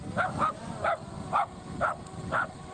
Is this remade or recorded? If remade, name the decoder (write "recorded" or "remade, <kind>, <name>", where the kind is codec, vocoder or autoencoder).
recorded